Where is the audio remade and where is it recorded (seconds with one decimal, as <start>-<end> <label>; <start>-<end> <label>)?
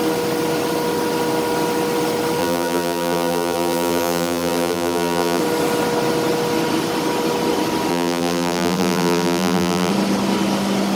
0.0-2.4 recorded; 2.4-5.4 remade; 5.4-7.9 recorded; 7.9-9.9 remade; 9.9-11.0 recorded